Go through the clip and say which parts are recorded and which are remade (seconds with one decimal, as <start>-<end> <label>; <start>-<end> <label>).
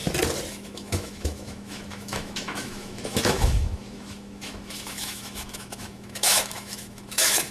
0.0-0.5 recorded; 0.5-7.5 remade